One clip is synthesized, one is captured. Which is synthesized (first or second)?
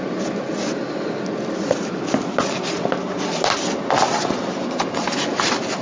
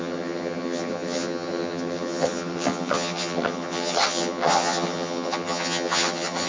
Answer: second